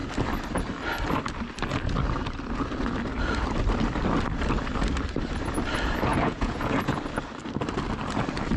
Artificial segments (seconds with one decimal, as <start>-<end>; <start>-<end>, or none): 6.1-7.0